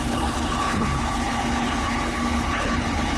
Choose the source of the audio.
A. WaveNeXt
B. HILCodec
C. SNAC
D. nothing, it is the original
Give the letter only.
B